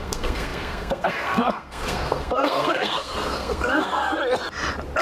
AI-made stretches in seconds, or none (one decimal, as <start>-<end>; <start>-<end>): 0.0-4.2